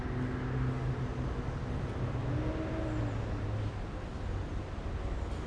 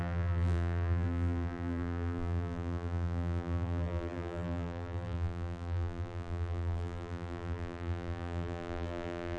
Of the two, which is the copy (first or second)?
second